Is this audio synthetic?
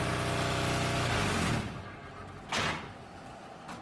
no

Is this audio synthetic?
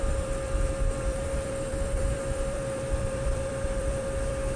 yes